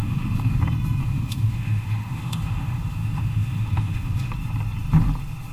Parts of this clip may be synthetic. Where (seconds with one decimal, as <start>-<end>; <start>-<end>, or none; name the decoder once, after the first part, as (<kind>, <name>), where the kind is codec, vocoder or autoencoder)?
0.0-0.6 (autoencoder, DAC-VAE); 1.0-4.3